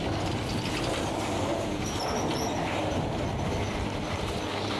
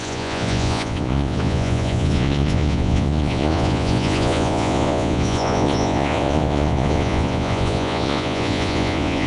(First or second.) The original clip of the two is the first